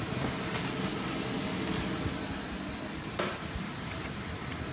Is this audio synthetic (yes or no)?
no